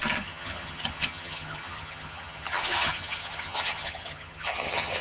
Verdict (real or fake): fake